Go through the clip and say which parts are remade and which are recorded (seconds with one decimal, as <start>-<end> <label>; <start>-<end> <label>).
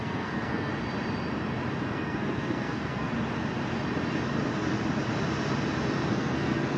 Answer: 0.0-0.7 remade; 0.7-1.9 recorded; 1.9-3.1 remade; 3.1-6.1 recorded; 6.1-6.8 remade